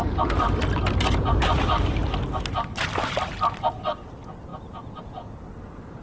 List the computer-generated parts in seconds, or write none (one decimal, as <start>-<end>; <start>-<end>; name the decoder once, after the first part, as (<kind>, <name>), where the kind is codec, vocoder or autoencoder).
none